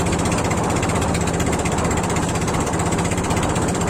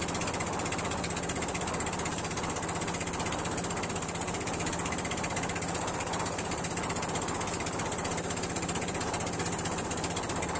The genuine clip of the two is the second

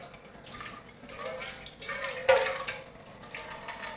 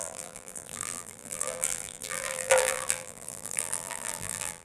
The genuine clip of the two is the first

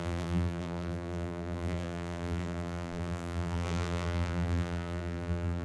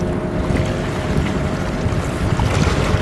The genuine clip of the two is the second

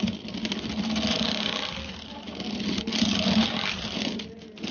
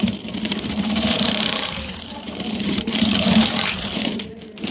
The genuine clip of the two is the first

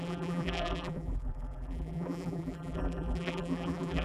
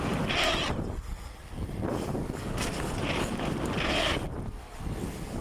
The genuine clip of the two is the second